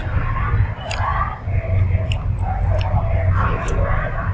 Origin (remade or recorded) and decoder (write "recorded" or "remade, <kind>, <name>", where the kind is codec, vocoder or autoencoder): recorded